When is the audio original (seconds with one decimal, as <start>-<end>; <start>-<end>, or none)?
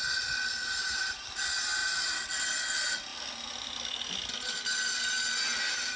0.0-0.8; 1.4-1.8; 2.3-6.0